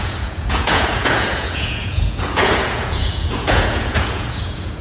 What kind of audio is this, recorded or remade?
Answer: remade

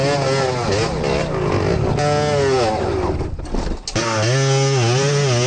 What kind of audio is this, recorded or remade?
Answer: recorded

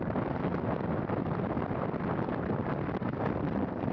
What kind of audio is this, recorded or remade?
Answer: recorded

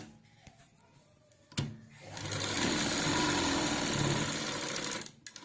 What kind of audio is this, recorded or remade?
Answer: recorded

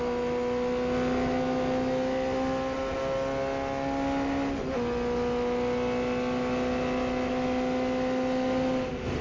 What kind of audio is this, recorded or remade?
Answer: recorded